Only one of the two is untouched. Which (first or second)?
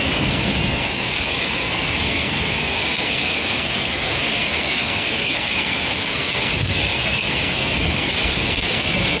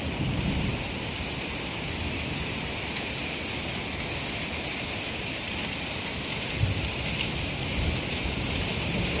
second